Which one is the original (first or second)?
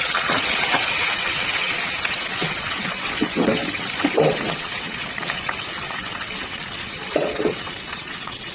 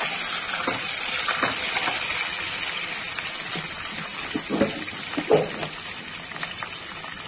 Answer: second